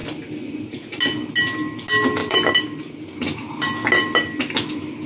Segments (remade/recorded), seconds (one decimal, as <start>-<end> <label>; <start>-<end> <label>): 0.0-2.2 recorded; 2.2-3.7 remade; 3.7-5.1 recorded